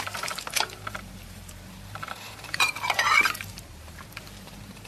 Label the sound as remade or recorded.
remade